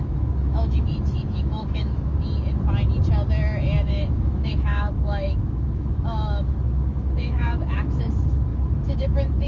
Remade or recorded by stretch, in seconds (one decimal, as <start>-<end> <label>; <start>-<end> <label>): 0.0-2.1 remade; 2.1-3.8 recorded; 3.8-9.5 remade